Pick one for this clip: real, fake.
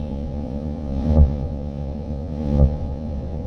fake